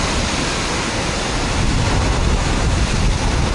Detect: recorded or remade recorded